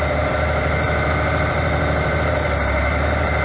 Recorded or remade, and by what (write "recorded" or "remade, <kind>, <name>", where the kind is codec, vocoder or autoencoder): remade, vocoder, BigVGAN v2